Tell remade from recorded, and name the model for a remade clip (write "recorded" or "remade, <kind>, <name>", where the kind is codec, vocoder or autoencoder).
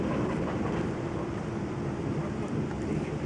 remade, vocoder, BigVGAN v2